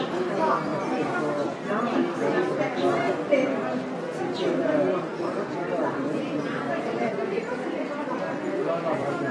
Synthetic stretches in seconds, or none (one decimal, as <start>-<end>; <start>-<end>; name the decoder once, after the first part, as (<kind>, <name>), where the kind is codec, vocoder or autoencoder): 0.7-1.8 (vocoder, BigVGAN v2); 5.1-9.3